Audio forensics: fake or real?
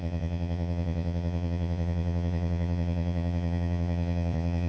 fake